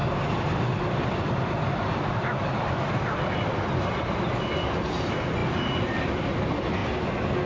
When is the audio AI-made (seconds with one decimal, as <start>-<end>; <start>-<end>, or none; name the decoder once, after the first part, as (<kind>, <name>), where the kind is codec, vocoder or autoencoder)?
none